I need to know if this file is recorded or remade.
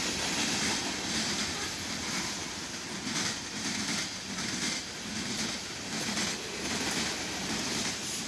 recorded